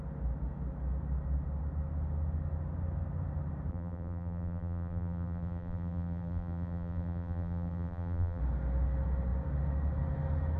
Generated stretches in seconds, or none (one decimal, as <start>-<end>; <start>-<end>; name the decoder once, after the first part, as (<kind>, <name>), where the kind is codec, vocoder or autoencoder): 3.7-8.4 (vocoder, BigVGAN v2)